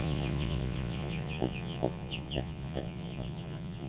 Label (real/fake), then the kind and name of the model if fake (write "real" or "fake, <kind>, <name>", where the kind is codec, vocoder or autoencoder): fake, vocoder, Vocos